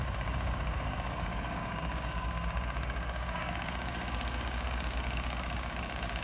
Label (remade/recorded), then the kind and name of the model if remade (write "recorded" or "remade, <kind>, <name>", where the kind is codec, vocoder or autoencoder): remade, codec, DAC